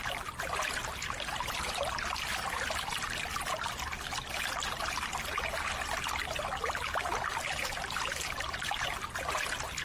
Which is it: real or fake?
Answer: real